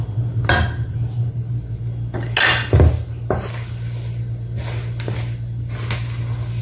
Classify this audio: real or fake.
real